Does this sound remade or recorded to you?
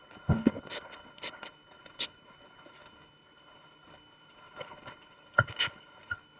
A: remade